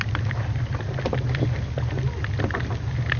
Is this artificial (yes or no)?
no